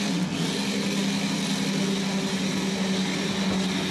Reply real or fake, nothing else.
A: real